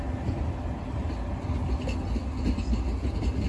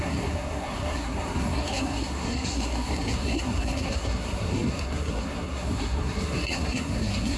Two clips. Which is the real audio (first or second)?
first